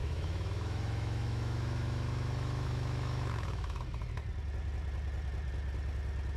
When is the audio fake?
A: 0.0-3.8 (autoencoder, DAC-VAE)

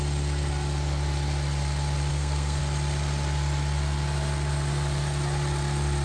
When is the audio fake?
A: 2.1-2.6 (codec, SNAC)

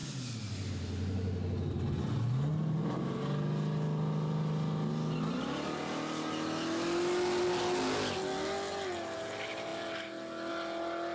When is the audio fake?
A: none

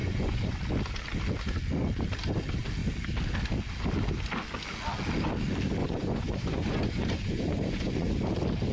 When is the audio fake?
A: 0.0-0.6 (vocoder, Vocos); 5.8-8.1